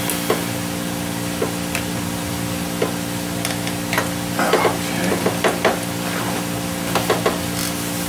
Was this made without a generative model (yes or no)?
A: yes